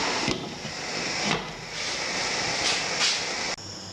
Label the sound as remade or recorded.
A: recorded